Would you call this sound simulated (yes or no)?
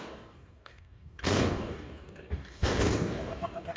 yes